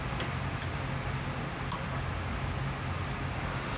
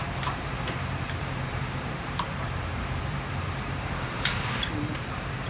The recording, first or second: first